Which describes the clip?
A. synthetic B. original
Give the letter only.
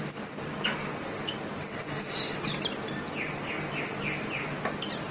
B